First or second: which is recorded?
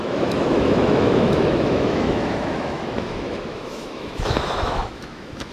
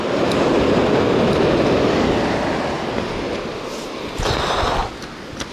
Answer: second